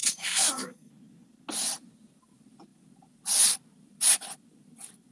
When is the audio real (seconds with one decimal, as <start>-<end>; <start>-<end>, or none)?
0.9-5.1